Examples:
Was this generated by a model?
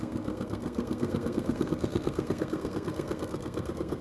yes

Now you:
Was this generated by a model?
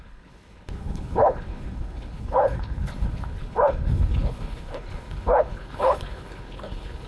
yes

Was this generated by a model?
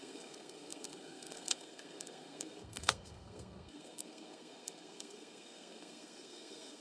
yes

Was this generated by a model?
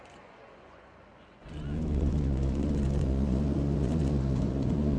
yes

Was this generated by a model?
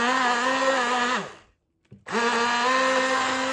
no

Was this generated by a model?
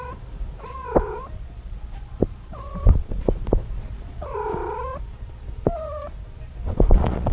yes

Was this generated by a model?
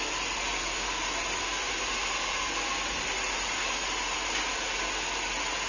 no